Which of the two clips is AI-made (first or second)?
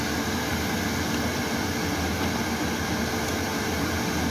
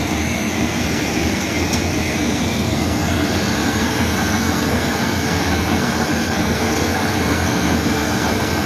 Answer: second